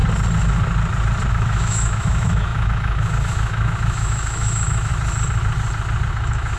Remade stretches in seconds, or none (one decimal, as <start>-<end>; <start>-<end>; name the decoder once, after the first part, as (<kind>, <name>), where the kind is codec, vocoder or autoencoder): 1.3-4.9 (autoencoder, DAC-VAE); 6.1-6.6